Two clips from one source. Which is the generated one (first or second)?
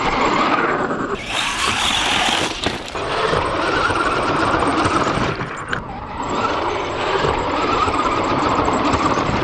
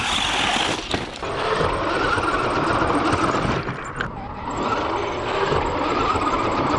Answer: first